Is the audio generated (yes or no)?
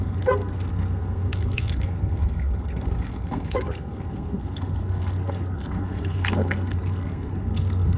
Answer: yes